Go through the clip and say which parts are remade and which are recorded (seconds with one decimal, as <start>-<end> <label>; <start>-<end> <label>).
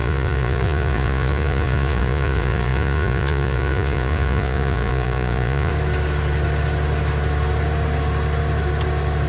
0.0-5.7 remade; 5.7-9.3 recorded